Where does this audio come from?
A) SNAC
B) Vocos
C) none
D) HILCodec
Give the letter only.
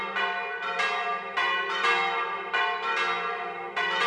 C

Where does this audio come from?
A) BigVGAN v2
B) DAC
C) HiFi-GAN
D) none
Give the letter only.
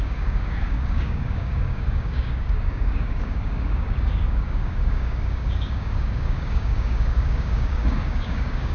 B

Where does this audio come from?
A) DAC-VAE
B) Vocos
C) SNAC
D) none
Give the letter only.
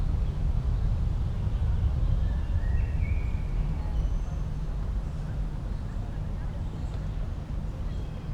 D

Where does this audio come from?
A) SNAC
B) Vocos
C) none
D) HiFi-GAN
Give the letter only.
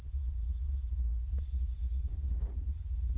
C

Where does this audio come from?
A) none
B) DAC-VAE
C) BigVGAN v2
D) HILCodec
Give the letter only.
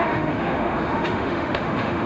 B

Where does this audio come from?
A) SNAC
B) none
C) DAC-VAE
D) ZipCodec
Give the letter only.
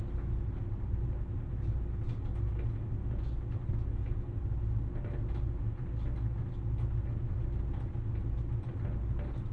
B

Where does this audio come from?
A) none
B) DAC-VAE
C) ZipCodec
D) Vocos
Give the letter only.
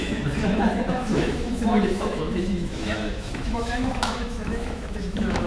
B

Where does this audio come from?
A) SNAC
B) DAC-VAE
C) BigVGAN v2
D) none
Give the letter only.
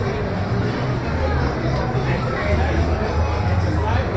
D